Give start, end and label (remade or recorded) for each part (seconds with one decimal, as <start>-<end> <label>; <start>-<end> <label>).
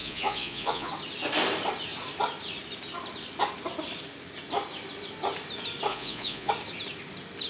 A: 0.0-0.9 remade; 0.9-5.9 recorded; 5.9-6.5 remade; 6.5-7.5 recorded